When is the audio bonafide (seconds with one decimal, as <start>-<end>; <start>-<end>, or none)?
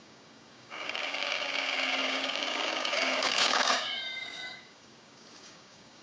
none